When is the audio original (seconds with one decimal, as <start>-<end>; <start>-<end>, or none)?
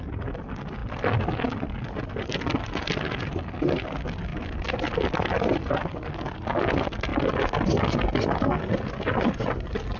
0.0-4.3; 5.7-10.0